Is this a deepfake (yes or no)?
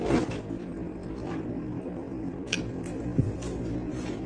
no